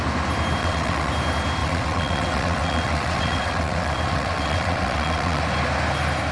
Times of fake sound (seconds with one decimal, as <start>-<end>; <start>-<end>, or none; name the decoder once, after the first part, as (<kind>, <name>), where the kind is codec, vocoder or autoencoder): 0.6-1.1 (vocoder, WaveNeXt); 1.6-5.4